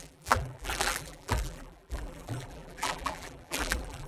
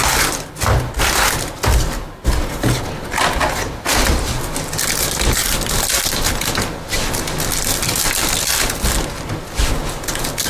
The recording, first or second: second